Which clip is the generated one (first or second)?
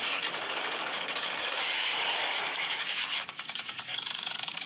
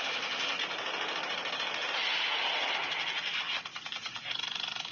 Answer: first